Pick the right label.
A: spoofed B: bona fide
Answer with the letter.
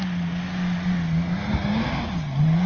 B